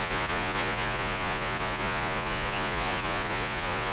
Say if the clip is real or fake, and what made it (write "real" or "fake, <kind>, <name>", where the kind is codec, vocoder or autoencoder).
fake, vocoder, Vocos